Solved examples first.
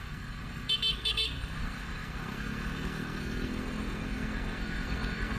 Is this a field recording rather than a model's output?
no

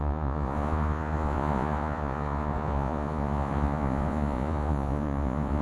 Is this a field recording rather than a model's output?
no